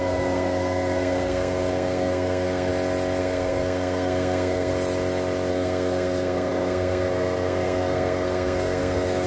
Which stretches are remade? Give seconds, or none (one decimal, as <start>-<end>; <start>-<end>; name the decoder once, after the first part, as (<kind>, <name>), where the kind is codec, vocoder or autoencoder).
0.0-2.7 (codec, SNAC); 3.2-4.7; 5.5-9.3